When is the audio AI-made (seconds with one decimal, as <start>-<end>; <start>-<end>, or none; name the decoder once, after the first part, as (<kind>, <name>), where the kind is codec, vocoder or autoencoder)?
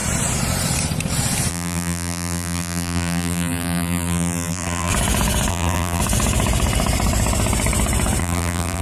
1.5-4.9 (vocoder, BigVGAN v2); 5.5-6.0; 8.2-8.8